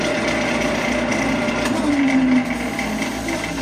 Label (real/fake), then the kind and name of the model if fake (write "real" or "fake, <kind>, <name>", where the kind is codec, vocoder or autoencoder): real